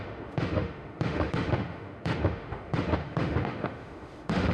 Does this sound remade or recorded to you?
remade